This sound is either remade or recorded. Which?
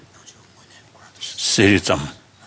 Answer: recorded